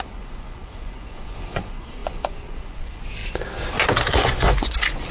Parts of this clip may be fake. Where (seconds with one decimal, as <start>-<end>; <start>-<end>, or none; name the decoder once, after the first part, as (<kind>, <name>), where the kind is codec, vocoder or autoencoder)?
0.0-3.2 (vocoder, Vocos); 4.1-5.1

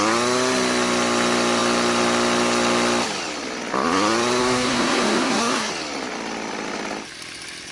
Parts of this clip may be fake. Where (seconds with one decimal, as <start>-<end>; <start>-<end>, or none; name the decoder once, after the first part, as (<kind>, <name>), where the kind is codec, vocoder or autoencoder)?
4.4-5.7 (codec, SNAC)

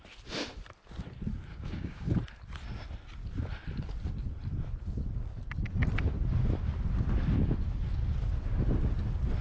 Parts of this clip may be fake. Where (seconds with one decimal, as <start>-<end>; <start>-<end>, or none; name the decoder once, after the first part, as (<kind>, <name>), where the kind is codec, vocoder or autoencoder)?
1.5-2.1 (codec, DAC)

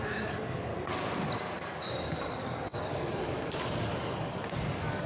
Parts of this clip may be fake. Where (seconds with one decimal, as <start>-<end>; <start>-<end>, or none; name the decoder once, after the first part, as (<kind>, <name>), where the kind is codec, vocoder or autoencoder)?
0.0-0.7 (codec, DAC); 1.7-5.1

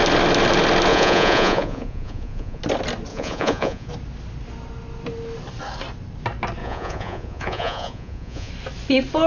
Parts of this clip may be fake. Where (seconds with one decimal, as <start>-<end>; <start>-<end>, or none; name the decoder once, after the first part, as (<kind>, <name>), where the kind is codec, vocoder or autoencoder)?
0.9-2.6 (vocoder, Vocos); 3.1-3.9; 6.6-8.5

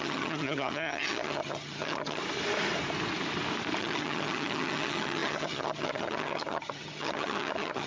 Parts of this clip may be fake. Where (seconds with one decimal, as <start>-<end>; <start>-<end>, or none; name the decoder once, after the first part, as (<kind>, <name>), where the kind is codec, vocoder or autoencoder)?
0.0-2.2 (vocoder, HiFi-GAN); 3.8-7.9

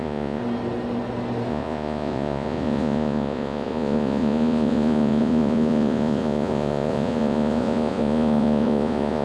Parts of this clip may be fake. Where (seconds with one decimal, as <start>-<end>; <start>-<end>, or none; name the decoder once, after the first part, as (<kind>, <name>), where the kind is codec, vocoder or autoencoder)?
0.0-0.4 (vocoder, Vocos); 1.5-9.2

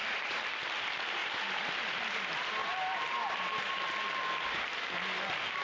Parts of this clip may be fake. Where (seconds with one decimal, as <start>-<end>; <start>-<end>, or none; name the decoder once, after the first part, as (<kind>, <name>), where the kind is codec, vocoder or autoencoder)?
0.0-0.5 (vocoder, BigVGAN v2); 1.2-1.7; 2.6-3.7